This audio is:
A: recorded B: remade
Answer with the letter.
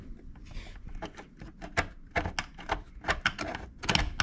A